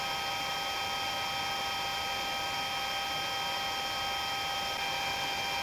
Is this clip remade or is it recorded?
recorded